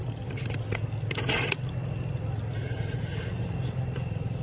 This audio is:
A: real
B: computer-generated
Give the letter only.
A